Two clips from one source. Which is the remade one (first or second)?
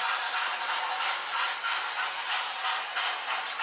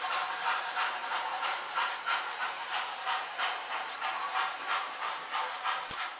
second